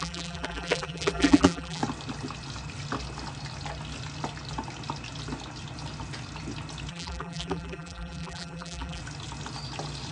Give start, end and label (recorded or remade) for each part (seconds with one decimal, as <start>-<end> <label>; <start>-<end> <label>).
0.0-1.8 remade; 1.8-6.9 recorded; 6.9-9.0 remade; 9.0-10.1 recorded